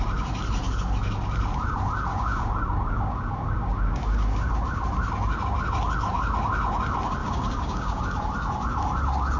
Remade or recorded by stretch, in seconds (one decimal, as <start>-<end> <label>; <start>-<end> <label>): 0.0-2.1 recorded; 2.1-4.5 remade; 4.5-7.2 recorded; 7.2-8.0 remade; 8.0-9.4 recorded